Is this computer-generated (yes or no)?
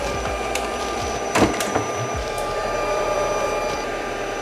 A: yes